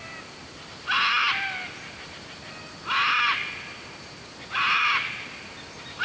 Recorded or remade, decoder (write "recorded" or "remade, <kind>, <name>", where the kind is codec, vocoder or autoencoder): remade, vocoder, BigVGAN v2